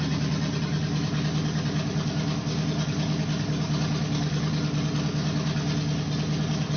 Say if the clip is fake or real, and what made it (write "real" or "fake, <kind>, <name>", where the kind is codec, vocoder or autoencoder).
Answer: real